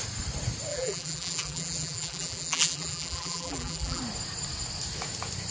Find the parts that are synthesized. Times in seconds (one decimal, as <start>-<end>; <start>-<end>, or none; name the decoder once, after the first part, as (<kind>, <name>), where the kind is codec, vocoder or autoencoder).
0.7-4.0 (vocoder, BigVGAN v2)